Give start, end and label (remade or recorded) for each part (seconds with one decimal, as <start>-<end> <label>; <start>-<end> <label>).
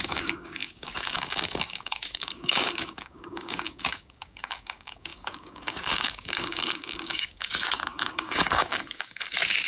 0.0-9.7 remade